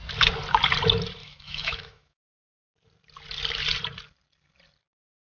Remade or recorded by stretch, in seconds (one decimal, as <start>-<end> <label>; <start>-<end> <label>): 0.0-1.2 recorded; 1.2-2.4 remade; 2.4-5.3 recorded